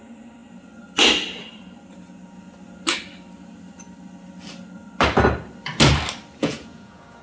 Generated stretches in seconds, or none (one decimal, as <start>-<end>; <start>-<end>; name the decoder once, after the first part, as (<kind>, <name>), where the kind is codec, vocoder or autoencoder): 6.4-7.2 (vocoder, Vocos)